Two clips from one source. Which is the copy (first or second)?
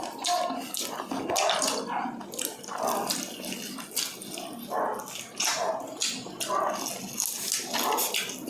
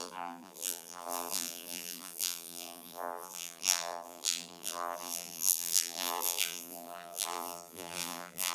second